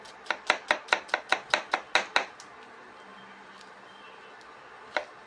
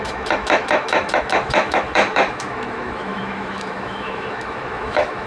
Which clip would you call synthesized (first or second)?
second